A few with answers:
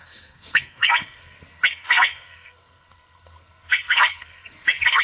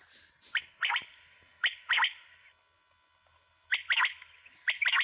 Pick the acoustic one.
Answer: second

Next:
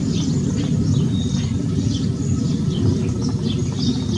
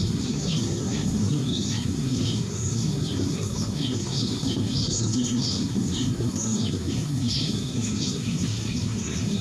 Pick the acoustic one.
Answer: first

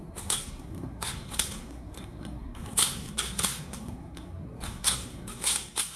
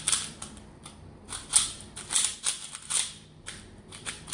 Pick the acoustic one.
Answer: second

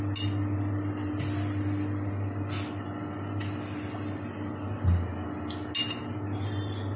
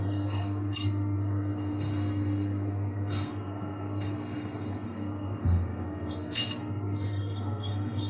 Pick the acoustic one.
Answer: first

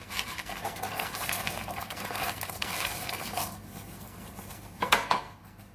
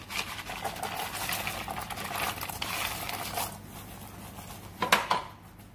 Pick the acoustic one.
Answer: second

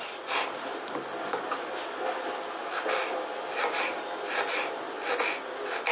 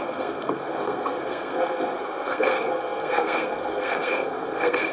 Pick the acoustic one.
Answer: first